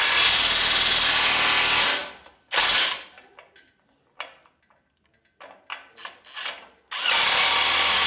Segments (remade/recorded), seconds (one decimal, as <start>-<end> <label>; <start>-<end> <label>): 0.0-8.1 recorded

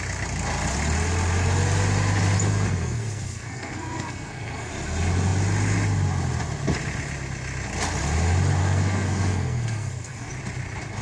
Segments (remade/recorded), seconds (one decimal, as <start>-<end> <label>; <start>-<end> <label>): 0.0-2.5 recorded; 2.5-4.7 remade; 4.7-8.6 recorded; 8.6-10.3 remade; 10.3-11.0 recorded

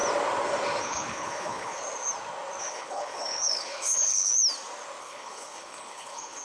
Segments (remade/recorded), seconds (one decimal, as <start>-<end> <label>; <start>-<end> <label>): 0.0-0.8 recorded; 0.8-1.8 remade; 1.8-2.6 recorded; 2.6-4.3 remade; 4.3-5.0 recorded; 5.0-6.4 remade

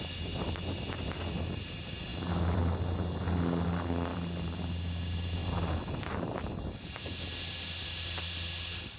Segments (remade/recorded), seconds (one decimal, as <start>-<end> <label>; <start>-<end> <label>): 0.0-2.1 recorded; 2.1-2.6 remade; 2.6-4.1 recorded; 4.1-4.7 remade; 4.7-5.4 recorded; 5.4-6.7 remade; 6.7-9.0 recorded

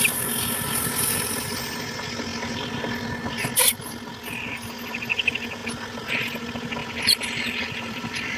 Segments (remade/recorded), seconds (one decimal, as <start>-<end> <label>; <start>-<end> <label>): 0.0-2.3 recorded; 2.3-3.3 remade; 3.3-6.8 recorded; 6.8-8.4 remade

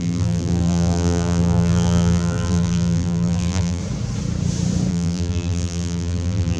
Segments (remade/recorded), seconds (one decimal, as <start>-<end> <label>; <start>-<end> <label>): 0.0-3.8 remade; 3.8-4.9 recorded; 4.9-6.6 remade